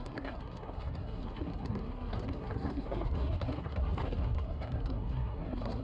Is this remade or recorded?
remade